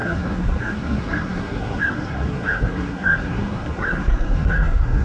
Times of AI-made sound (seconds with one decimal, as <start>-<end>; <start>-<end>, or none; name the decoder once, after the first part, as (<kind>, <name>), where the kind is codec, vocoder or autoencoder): 0.0-5.0 (codec, SNAC)